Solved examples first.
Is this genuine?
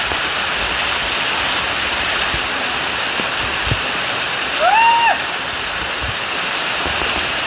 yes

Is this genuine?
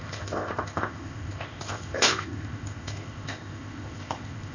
no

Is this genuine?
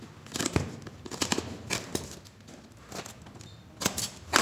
yes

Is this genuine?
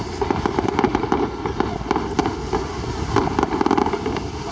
yes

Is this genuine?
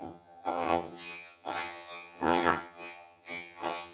no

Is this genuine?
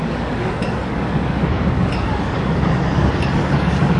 no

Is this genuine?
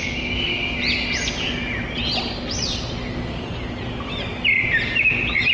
yes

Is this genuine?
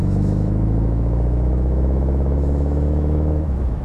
no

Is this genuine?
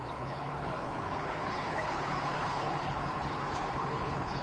no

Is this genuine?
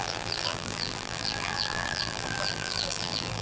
no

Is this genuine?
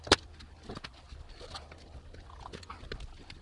yes